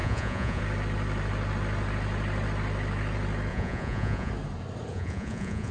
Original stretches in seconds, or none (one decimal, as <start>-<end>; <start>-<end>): 0.6-3.5; 4.3-4.9